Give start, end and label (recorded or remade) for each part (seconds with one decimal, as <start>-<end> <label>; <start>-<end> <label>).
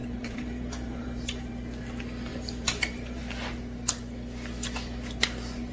0.0-1.5 remade; 1.5-2.3 recorded; 2.3-3.2 remade; 3.2-5.7 recorded